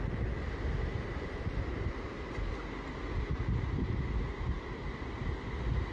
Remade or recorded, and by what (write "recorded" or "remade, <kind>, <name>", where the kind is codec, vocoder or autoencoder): recorded